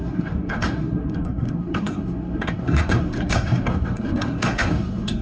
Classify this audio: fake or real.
fake